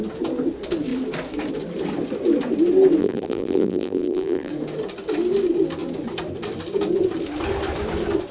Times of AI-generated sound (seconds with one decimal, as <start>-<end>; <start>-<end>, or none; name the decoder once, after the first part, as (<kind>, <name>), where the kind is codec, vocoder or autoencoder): 3.0-4.5 (vocoder, BigVGAN v2)